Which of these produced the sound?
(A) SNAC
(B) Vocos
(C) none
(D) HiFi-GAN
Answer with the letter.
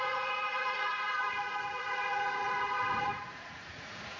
B